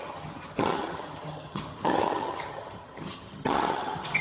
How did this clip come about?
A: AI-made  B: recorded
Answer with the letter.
A